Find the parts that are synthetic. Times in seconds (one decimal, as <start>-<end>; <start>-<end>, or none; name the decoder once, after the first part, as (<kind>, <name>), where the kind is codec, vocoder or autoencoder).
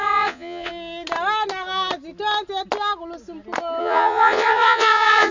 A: 0.0-0.7 (vocoder, Vocos); 3.8-5.3